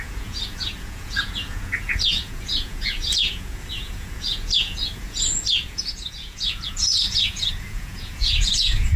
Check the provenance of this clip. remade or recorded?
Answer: remade